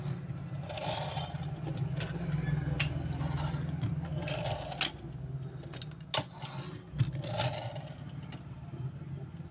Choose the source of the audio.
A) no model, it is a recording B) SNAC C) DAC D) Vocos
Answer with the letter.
A